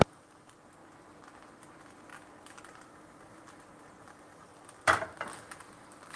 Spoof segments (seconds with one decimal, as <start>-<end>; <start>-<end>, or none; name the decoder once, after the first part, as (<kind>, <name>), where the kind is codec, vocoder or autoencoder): 0.0-0.8 (vocoder, BigVGAN v2); 1.4-2.1; 2.6-4.5; 5.4-6.2